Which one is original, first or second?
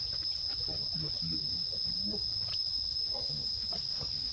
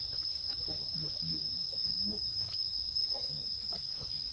first